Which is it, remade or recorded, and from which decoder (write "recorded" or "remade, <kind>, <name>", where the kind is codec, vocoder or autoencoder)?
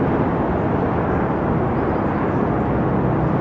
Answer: recorded